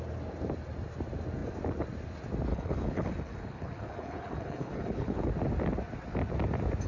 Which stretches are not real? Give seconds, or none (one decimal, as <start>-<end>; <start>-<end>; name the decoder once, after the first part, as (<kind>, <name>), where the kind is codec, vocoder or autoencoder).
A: 2.5-5.3 (codec, HILCodec)